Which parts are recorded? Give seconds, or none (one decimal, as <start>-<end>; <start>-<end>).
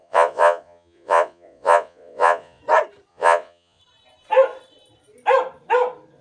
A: 2.6-3.1; 3.8-6.2